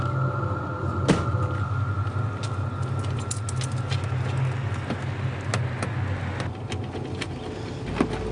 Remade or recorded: recorded